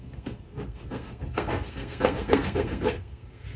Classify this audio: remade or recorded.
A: remade